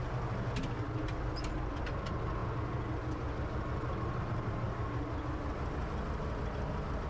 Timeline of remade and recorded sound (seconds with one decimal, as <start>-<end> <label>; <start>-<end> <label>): 0.0-7.1 recorded